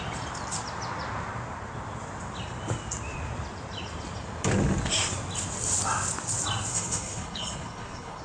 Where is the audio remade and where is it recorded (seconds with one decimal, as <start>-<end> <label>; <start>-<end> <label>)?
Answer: 0.0-6.7 recorded; 6.7-8.2 remade

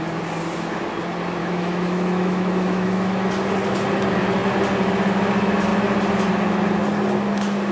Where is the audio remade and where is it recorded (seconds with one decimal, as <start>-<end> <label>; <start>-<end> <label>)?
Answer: 0.0-1.4 recorded; 1.4-3.3 remade; 3.3-7.7 recorded

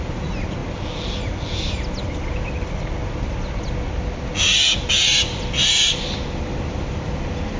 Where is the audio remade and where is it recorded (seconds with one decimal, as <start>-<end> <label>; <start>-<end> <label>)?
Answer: 0.0-7.6 recorded

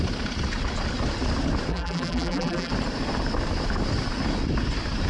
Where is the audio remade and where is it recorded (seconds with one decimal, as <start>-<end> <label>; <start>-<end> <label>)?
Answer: 0.0-1.7 recorded; 1.7-2.7 remade; 2.7-5.1 recorded

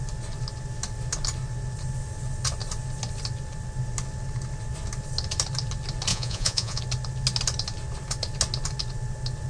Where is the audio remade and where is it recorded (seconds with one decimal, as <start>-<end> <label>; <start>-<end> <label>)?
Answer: 0.0-6.1 recorded; 6.1-6.8 remade; 6.8-9.5 recorded